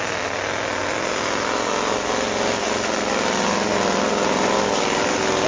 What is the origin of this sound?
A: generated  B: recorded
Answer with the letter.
B